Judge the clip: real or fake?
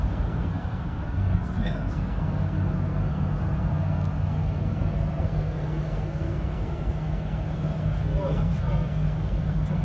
fake